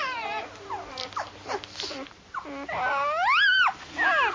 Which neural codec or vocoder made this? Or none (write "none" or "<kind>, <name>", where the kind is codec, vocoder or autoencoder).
none